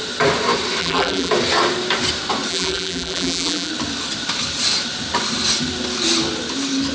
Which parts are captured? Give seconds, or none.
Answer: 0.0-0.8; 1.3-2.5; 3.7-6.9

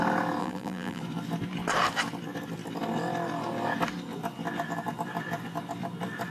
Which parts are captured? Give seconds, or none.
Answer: 0.0-0.4; 1.0-6.3